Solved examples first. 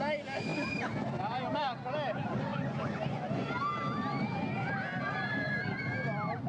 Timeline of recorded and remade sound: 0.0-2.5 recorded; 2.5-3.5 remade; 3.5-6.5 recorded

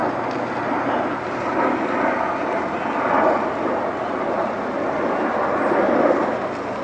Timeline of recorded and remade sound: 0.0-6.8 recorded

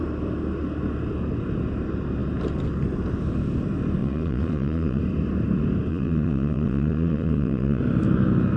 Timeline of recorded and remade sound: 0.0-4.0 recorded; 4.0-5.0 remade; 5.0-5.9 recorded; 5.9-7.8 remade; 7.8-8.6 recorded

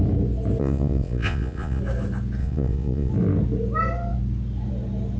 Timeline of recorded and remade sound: 0.0-0.6 recorded; 0.6-1.8 remade; 1.8-2.4 recorded; 2.4-3.1 remade; 3.1-5.2 recorded